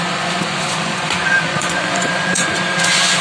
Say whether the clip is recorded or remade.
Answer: remade